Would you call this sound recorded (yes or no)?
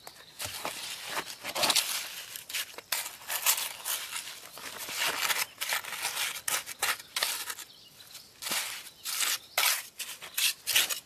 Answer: yes